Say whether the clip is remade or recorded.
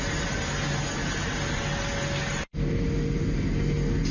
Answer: recorded